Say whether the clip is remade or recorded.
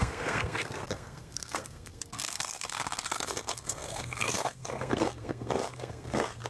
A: remade